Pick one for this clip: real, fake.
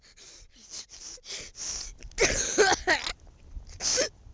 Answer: real